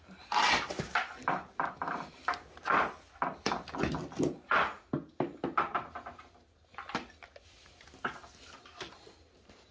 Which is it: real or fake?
real